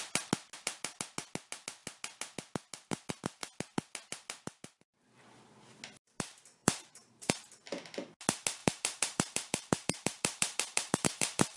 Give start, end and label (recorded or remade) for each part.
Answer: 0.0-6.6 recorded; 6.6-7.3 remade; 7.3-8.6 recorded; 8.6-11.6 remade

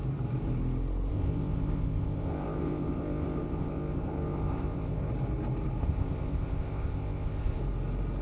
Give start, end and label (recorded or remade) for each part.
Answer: 0.0-1.1 recorded; 1.1-5.1 remade; 5.1-5.8 recorded; 5.8-7.6 remade; 7.6-8.2 recorded